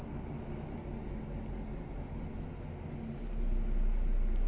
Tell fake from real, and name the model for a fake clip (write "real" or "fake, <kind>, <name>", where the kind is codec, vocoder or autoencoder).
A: real